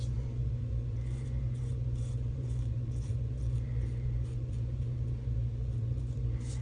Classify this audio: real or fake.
fake